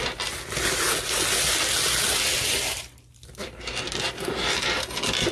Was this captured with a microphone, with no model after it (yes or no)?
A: yes